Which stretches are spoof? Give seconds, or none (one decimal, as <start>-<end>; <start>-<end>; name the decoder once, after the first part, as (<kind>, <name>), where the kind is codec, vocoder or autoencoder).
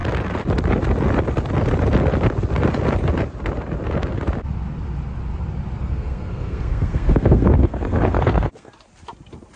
5.8-8.7 (codec, SNAC)